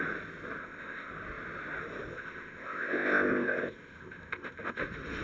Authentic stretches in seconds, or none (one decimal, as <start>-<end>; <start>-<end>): 0.0-0.6; 1.1-2.1; 4.8-5.2